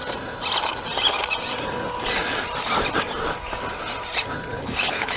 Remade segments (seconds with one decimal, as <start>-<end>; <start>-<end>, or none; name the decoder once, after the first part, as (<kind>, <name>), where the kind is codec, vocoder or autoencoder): 4.6-5.2 (codec, HILCodec)